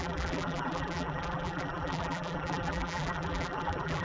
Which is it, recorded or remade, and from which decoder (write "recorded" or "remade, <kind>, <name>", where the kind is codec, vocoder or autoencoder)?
remade, vocoder, BigVGAN v2